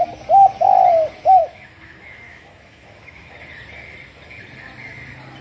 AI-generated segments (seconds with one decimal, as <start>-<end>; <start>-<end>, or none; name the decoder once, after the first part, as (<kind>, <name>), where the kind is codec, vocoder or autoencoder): 1.4-3.4 (autoencoder, DAC-VAE)